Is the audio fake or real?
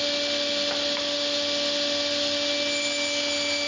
real